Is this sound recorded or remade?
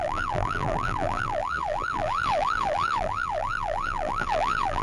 remade